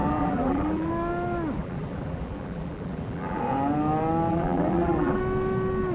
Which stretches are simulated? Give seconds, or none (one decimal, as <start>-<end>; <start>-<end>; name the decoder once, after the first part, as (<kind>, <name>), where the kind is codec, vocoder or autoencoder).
0.0-0.9 (vocoder, BigVGAN v2); 1.6-3.4; 4.3-5.2